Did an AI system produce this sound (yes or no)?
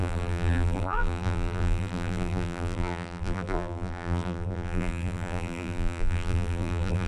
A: yes